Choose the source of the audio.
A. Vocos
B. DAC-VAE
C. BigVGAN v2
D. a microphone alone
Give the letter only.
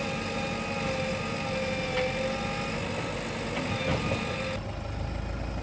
D